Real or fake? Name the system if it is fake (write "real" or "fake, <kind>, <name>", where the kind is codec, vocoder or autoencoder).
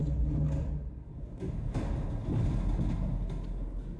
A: real